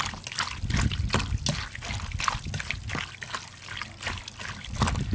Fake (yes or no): no